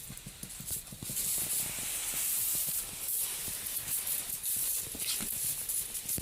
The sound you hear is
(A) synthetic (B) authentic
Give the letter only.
B